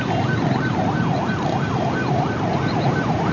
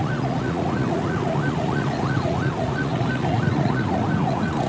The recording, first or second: first